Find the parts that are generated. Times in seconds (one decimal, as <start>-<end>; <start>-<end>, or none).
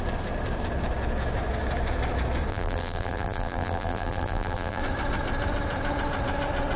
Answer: 2.5-4.8